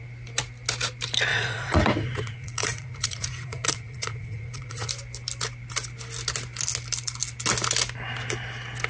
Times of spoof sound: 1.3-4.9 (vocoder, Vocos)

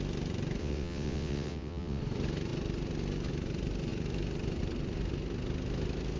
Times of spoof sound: 0.6-2.0 (vocoder, WaveNeXt)

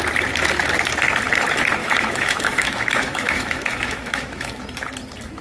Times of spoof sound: 1.8-4.6 (autoencoder, DAC-VAE)

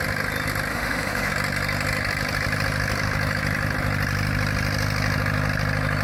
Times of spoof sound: 0.7-1.3 (autoencoder, DAC-VAE)

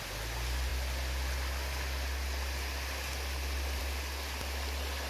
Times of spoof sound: none

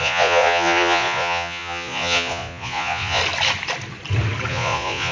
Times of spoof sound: 0.0-3.2 (vocoder, Vocos); 4.5-5.1